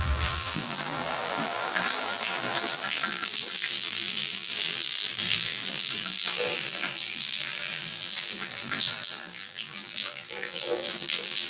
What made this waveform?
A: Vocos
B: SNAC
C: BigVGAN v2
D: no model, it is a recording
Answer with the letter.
C